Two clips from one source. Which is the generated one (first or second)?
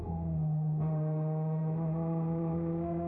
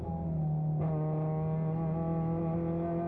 first